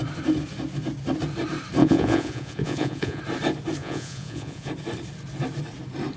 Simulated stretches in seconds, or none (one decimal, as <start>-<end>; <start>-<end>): 1.8-3.2; 3.8-4.7